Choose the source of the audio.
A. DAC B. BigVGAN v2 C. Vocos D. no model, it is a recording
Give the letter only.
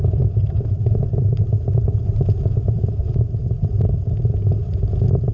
B